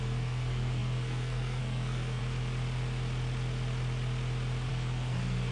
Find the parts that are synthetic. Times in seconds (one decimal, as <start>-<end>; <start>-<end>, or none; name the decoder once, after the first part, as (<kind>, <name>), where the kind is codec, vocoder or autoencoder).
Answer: 0.0-2.2 (codec, SNAC); 4.7-5.5